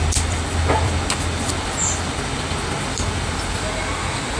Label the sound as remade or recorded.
recorded